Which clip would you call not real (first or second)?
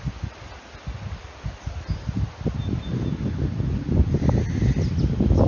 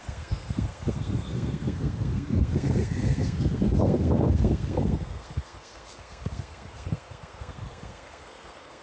second